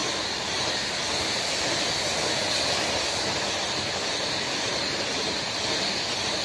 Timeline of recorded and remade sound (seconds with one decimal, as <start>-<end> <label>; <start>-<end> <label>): 0.0-6.4 recorded